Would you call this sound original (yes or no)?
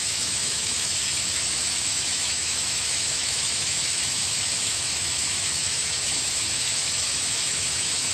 no